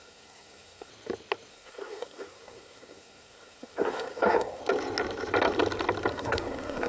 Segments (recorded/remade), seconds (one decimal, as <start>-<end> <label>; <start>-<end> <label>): 0.0-0.9 remade; 0.9-1.5 recorded; 1.5-4.6 remade; 4.6-6.1 recorded; 6.1-6.9 remade